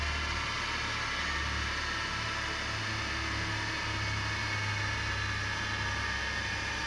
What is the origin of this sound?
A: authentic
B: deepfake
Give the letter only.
A